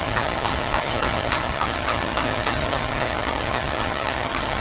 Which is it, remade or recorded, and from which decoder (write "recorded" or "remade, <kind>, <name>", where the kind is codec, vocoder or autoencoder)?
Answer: remade, vocoder, HiFi-GAN